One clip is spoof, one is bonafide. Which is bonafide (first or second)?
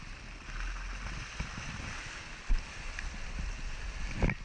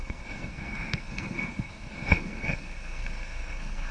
first